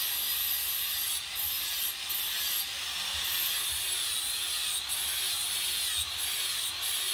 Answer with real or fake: real